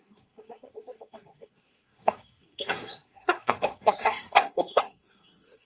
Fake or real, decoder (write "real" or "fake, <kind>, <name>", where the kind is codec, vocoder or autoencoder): fake, codec, SNAC